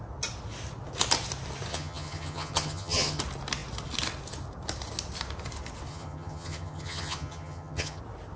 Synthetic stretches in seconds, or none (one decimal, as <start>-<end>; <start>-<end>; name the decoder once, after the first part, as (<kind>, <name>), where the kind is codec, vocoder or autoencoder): 1.7-3.2 (vocoder, HiFi-GAN); 5.9-8.0